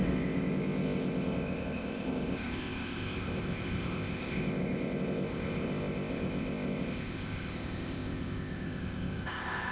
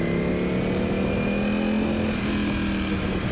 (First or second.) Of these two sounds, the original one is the second